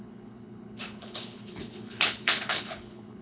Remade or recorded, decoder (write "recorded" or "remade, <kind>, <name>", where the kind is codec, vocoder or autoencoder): remade, codec, HILCodec